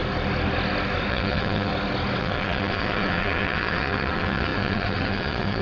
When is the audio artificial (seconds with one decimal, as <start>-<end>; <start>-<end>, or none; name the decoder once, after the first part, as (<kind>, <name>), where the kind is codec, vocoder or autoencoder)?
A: 1.1-1.7 (vocoder, WaveNeXt); 2.2-5.6